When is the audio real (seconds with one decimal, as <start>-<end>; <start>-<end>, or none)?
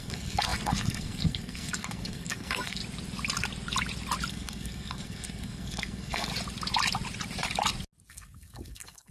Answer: 2.8-4.3; 6.3-8.1